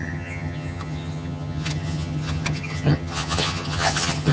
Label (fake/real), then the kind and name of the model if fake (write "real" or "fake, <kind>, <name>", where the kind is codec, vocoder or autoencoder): fake, vocoder, HiFi-GAN